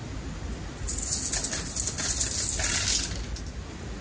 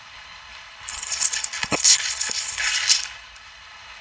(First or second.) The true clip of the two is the first